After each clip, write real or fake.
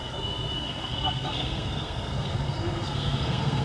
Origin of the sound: fake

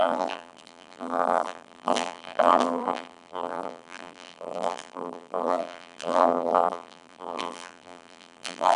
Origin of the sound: fake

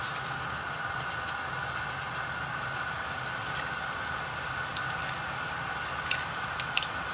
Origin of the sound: real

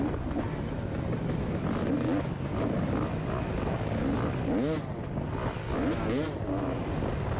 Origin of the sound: real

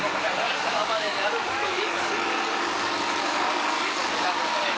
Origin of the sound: fake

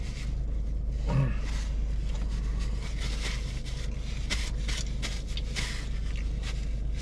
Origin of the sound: real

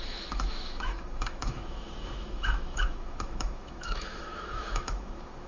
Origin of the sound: fake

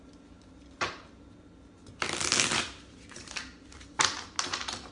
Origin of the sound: real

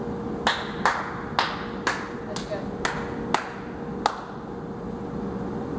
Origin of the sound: real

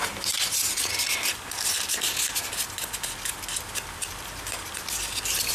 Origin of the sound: real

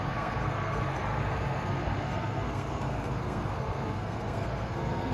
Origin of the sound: fake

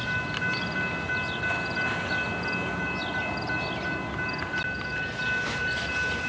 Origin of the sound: real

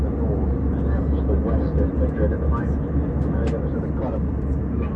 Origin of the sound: real